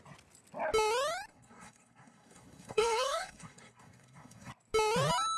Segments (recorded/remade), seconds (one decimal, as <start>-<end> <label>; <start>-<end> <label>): 0.0-1.3 recorded; 1.3-4.5 remade; 4.5-5.4 recorded